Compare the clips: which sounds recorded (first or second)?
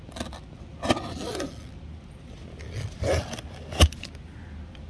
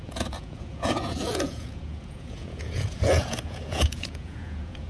first